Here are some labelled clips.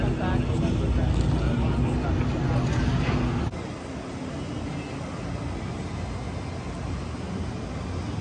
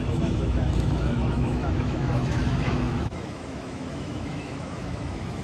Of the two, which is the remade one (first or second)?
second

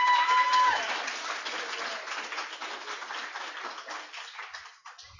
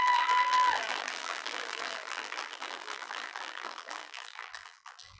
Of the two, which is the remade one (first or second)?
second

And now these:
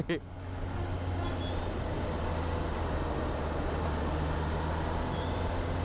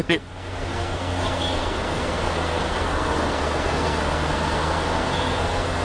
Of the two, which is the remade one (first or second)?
second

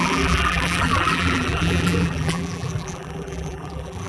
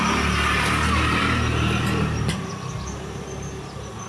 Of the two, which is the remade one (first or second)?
first